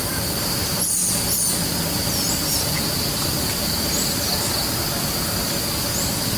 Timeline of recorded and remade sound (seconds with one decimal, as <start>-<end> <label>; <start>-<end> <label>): 0.0-3.6 remade; 3.6-5.8 recorded; 5.8-6.4 remade